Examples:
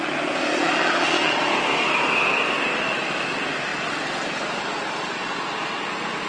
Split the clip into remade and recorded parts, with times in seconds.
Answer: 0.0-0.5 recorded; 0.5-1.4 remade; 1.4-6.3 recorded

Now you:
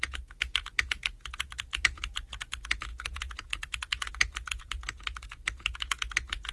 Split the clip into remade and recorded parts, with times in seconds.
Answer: 0.0-6.5 remade

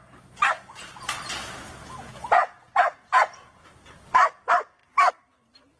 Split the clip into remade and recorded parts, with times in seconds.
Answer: 0.0-2.1 recorded; 2.1-3.8 remade; 3.8-5.8 recorded